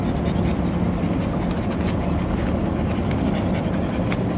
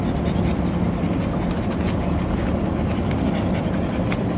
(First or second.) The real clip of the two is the first